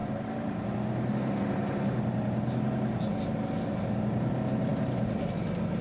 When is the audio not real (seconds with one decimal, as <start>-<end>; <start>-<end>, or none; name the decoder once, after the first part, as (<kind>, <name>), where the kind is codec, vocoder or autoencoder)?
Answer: none